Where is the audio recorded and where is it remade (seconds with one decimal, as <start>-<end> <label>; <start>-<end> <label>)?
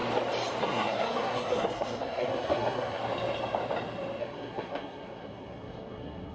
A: 0.0-0.6 recorded; 0.6-3.0 remade; 3.0-4.2 recorded; 4.2-6.3 remade